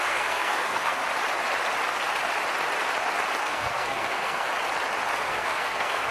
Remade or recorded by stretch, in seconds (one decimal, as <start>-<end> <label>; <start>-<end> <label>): 0.0-1.0 remade; 1.0-3.4 recorded; 3.4-4.5 remade; 4.5-5.2 recorded; 5.2-6.1 remade